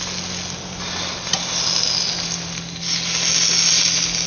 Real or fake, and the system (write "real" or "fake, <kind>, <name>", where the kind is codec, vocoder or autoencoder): real